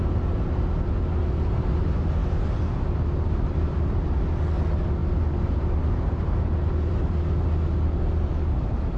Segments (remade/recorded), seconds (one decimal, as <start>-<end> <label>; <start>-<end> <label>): 0.0-9.0 recorded

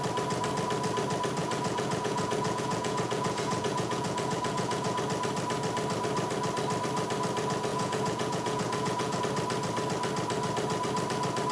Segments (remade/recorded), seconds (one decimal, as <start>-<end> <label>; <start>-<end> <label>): 0.0-1.4 recorded; 1.4-5.0 remade; 5.0-7.7 recorded; 7.7-9.2 remade; 9.2-11.5 recorded

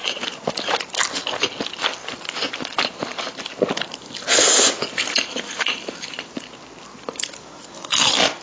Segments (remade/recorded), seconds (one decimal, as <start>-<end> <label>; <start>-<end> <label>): 0.0-0.8 remade; 0.8-2.0 recorded; 2.0-4.1 remade; 4.1-5.3 recorded; 5.3-6.4 remade; 6.4-8.4 recorded

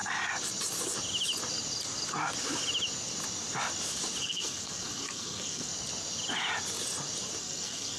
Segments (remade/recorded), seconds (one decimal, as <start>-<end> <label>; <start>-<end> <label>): 0.0-4.2 recorded; 4.2-5.7 remade; 5.7-7.4 recorded; 7.4-8.0 remade

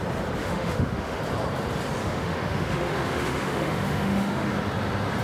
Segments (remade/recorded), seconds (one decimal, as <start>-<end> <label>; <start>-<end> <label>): 0.0-0.4 recorded; 0.4-1.2 remade; 1.2-2.0 recorded; 2.0-4.5 remade; 4.5-5.2 recorded

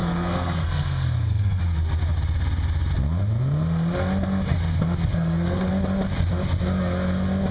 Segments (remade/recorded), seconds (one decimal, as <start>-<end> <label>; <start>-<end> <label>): 0.0-1.6 remade; 1.6-5.1 recorded; 5.1-5.7 remade; 5.7-7.5 recorded

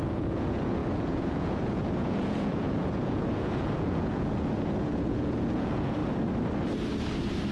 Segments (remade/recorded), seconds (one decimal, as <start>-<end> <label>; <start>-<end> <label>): 0.0-6.0 remade; 6.0-7.5 recorded